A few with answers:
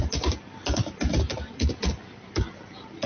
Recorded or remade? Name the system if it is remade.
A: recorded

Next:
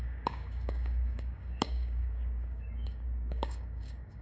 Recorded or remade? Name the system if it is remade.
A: remade, codec, DAC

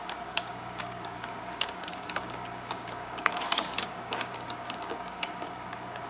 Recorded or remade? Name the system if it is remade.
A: remade, codec, DAC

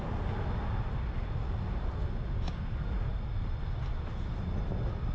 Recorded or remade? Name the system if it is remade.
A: recorded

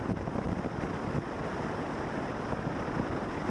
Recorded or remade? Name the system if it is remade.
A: recorded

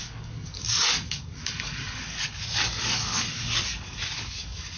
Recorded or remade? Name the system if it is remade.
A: remade, codec, DAC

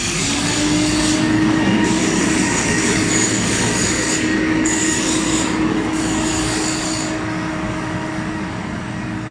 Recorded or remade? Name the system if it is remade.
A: remade, codec, DAC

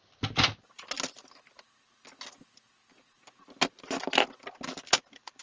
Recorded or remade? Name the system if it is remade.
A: recorded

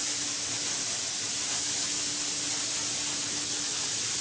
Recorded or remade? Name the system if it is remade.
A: recorded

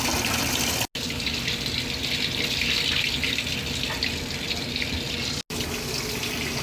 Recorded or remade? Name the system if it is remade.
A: recorded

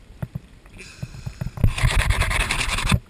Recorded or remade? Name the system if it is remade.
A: recorded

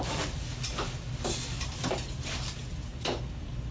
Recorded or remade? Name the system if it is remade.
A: recorded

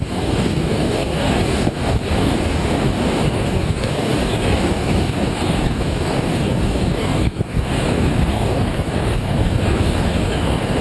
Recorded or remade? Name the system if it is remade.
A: remade, codec, DAC